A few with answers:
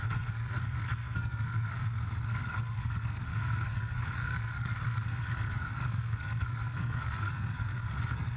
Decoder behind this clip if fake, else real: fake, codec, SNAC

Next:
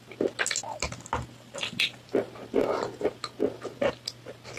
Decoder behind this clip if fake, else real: real